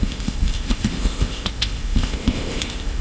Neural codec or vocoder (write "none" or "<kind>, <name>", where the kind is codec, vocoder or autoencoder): codec, ZipCodec